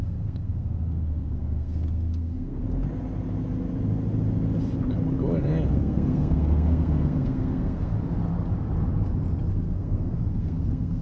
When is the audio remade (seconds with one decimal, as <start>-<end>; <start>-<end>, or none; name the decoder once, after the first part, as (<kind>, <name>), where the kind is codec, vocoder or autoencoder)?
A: 0.0-2.6 (codec, SNAC); 5.7-7.9; 9.5-11.0